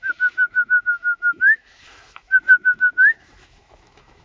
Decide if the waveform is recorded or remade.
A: remade